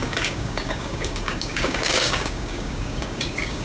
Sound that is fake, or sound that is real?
fake